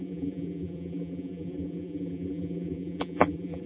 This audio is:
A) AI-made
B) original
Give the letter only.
A